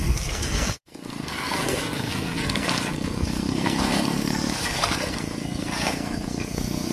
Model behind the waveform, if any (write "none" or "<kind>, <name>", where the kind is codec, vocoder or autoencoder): codec, SNAC